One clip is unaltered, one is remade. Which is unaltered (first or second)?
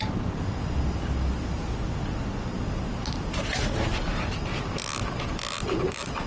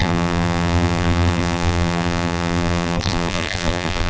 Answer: first